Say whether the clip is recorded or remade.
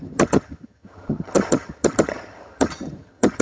remade